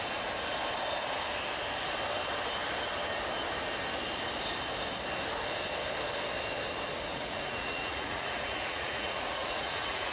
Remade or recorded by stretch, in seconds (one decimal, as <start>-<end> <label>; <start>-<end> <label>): 0.0-7.1 recorded; 7.1-10.1 remade